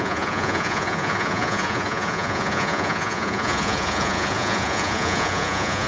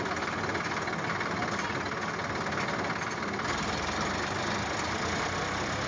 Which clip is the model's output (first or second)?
first